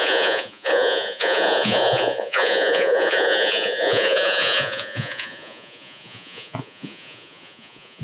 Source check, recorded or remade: remade